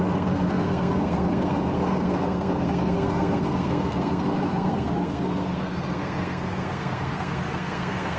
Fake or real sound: fake